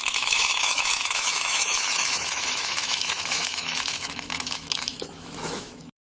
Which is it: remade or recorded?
remade